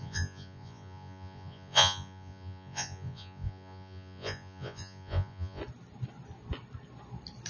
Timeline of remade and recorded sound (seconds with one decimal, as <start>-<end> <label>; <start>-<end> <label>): 0.0-5.6 remade; 5.6-7.5 recorded